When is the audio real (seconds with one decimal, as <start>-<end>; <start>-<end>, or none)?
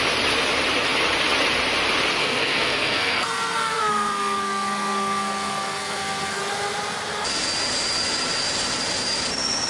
0.0-2.2; 6.4-9.7